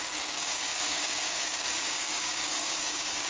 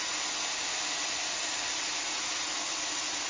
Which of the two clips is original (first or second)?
second